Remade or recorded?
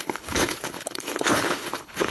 remade